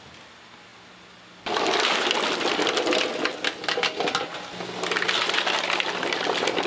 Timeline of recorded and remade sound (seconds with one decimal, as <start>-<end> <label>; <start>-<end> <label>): 0.0-6.7 recorded